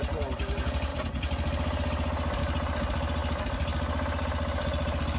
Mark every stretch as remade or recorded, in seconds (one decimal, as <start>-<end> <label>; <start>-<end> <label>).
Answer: 0.0-5.2 recorded